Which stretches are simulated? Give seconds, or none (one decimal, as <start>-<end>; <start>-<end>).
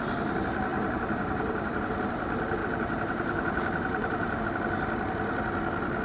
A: 0.7-1.8; 2.6-4.4